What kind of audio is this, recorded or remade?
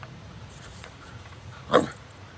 remade